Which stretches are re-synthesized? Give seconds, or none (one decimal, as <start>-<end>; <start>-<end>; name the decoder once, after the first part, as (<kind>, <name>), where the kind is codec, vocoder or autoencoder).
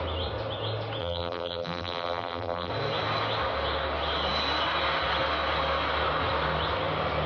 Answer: 1.0-2.7 (vocoder, BigVGAN v2)